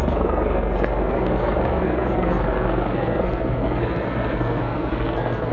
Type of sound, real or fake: fake